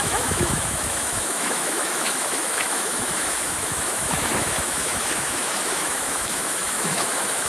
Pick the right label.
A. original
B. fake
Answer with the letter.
B